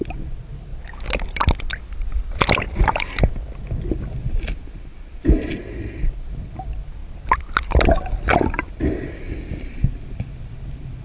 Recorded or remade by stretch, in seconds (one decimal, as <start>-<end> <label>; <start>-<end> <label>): 0.0-11.0 recorded